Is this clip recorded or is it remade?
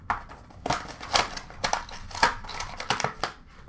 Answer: recorded